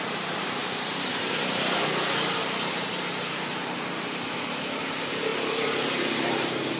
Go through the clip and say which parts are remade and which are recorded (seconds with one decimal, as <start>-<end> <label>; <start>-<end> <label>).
0.0-0.6 remade; 0.6-2.4 recorded; 2.4-2.9 remade; 2.9-4.5 recorded; 4.5-5.3 remade; 5.3-6.1 recorded; 6.1-6.8 remade